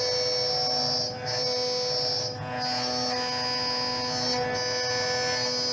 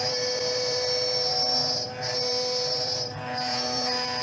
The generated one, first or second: second